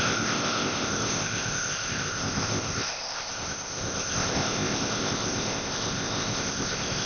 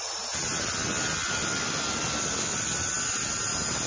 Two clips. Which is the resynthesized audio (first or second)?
first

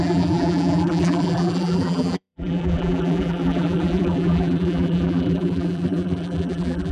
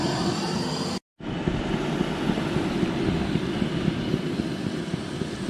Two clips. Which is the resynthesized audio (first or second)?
first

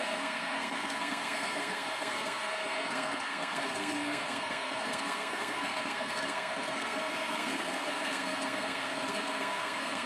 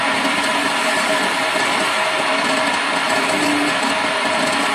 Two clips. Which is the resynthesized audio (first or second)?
first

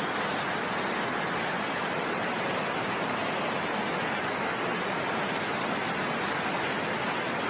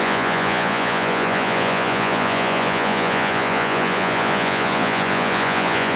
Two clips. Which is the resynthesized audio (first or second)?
second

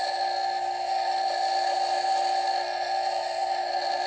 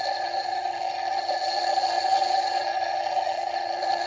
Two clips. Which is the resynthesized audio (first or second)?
second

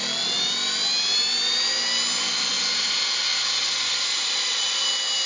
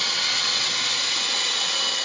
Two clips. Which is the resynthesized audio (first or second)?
second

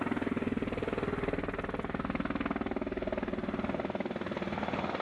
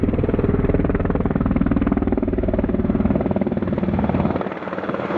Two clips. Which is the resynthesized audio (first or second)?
second